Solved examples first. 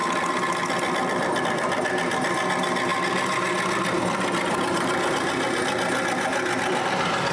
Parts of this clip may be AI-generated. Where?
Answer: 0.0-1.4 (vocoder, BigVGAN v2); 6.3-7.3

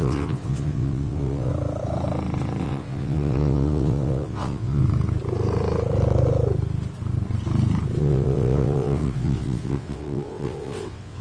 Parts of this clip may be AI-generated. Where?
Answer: 0.0-1.5 (vocoder, WaveNeXt); 2.6-4.8; 8.0-11.2

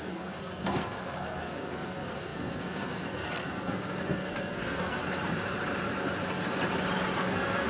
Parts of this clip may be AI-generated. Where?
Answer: 0.0-5.0 (codec, SNAC); 7.2-7.7

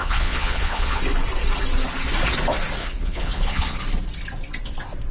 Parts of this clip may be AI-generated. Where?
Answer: 0.0-1.0 (vocoder, Vocos); 2.8-3.8

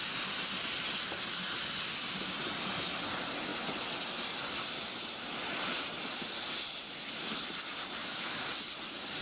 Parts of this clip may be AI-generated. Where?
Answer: 8.0-8.5 (autoencoder, DAC-VAE)

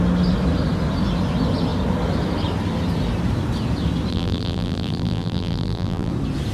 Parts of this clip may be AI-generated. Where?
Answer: 4.1-6.1 (vocoder, BigVGAN v2)